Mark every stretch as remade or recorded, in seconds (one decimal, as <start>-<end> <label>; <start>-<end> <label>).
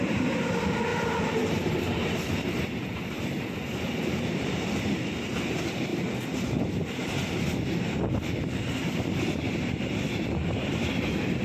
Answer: 0.0-5.9 recorded; 5.9-6.9 remade; 6.9-11.4 recorded